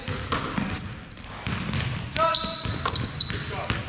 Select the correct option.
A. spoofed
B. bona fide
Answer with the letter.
B